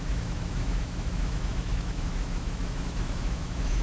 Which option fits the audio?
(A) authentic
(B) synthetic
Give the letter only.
B